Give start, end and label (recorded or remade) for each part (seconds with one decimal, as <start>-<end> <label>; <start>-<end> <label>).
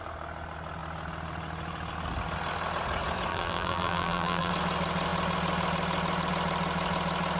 0.0-3.3 recorded; 3.3-4.5 remade; 4.5-7.4 recorded